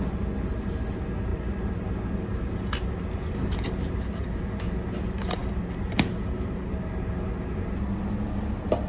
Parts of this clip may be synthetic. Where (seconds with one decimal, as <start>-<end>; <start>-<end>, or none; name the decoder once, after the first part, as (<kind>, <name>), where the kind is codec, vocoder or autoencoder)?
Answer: none